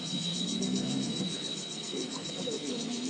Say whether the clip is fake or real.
fake